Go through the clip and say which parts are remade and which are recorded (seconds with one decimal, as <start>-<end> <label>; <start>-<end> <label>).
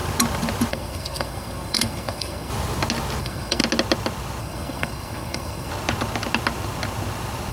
0.0-0.7 recorded; 0.7-2.5 remade; 2.5-3.2 recorded; 3.2-3.6 remade; 3.6-4.4 recorded; 4.4-5.7 remade; 5.7-7.5 recorded